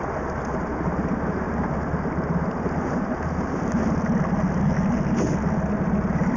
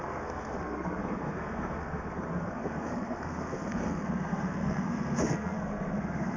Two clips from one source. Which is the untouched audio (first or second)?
first